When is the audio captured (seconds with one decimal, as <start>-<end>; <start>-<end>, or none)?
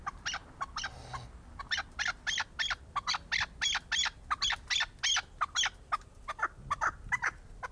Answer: 0.0-7.7